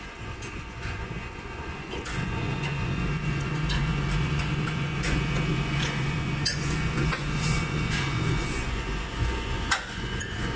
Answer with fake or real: fake